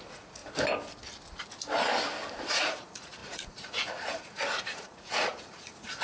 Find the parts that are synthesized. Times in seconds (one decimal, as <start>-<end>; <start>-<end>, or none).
0.0-0.4; 2.5-6.0